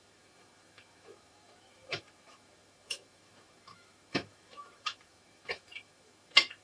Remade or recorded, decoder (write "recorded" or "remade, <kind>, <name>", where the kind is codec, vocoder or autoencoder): remade, autoencoder, DAC-VAE